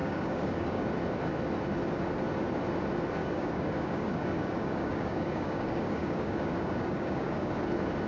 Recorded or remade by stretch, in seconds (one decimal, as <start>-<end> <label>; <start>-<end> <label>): 0.0-0.9 remade; 0.9-3.2 recorded; 3.2-7.5 remade; 7.5-8.1 recorded